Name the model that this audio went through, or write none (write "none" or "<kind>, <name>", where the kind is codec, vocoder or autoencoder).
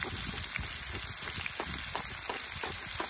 none